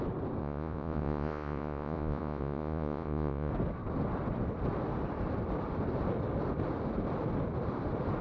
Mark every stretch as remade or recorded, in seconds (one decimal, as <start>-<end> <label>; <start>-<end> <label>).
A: 0.0-0.4 recorded; 0.4-3.5 remade; 3.5-8.2 recorded